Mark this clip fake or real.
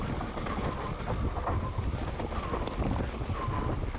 real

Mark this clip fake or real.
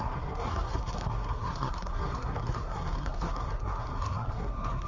fake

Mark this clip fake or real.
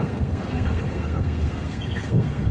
fake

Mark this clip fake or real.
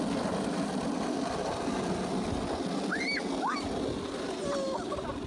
real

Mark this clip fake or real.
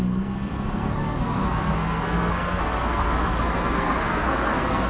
fake